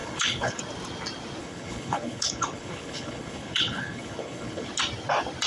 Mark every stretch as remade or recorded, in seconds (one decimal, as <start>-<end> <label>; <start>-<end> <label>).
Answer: 0.0-0.6 remade; 0.6-1.4 recorded; 1.4-4.7 remade; 4.7-5.5 recorded